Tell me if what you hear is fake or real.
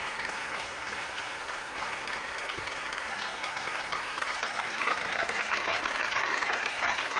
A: fake